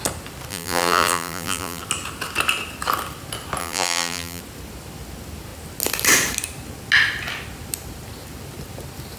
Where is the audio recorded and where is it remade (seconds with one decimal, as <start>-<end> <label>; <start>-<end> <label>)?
0.0-0.5 recorded; 0.5-1.8 remade; 1.8-3.6 recorded; 3.6-4.4 remade; 4.4-9.2 recorded